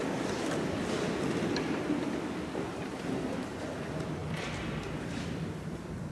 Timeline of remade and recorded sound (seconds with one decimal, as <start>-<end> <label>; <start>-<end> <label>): 0.0-2.7 recorded; 2.7-3.6 remade; 3.6-6.1 recorded